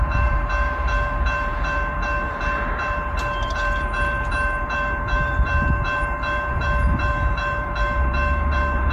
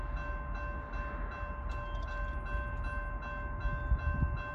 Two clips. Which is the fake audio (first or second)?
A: first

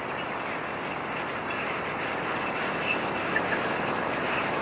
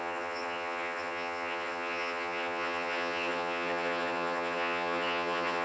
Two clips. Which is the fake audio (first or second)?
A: second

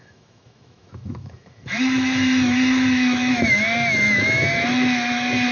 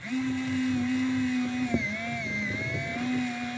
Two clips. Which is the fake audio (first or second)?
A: first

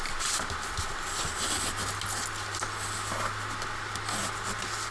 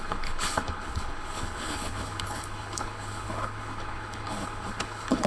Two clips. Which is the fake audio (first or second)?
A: second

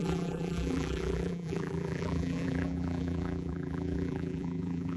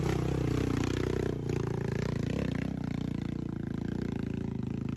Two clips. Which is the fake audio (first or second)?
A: first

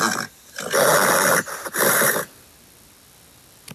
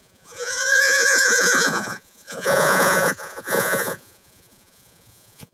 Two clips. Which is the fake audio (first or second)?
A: second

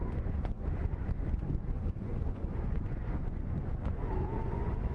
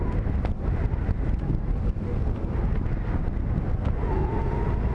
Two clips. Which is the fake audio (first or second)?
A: first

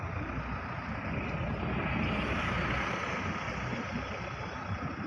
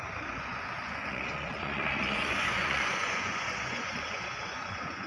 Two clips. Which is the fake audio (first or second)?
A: second